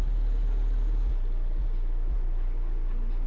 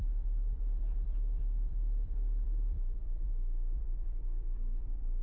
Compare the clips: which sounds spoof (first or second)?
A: second